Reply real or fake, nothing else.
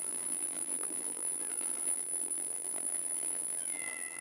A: fake